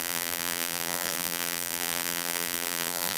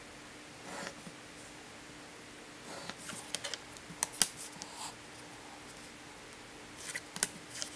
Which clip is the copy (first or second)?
first